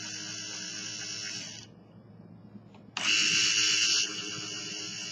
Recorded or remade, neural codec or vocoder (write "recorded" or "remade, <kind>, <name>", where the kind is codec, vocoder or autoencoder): recorded